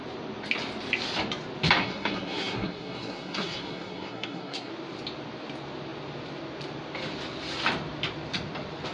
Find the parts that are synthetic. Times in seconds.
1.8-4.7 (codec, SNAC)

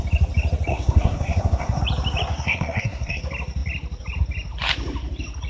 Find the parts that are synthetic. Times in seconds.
0.7-1.8 (codec, SNAC); 2.3-3.2

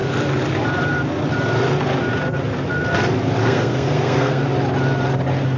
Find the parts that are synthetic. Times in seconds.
3.4-4.4 (codec, SNAC)

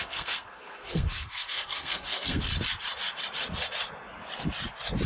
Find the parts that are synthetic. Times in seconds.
0.0-2.5 (codec, SNAC)

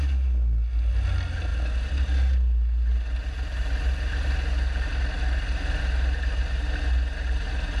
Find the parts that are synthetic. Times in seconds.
none

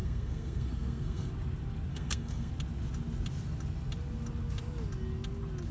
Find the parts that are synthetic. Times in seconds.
0.0-1.3 (codec, SNAC); 1.9-2.5